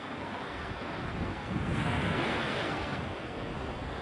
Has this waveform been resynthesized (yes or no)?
yes